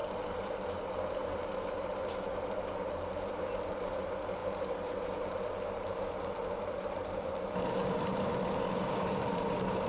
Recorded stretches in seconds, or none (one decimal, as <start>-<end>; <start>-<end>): none